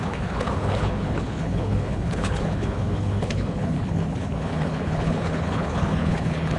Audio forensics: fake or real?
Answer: fake